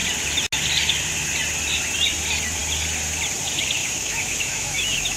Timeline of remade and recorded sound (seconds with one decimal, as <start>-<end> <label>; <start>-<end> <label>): 0.0-3.8 recorded; 3.8-5.2 remade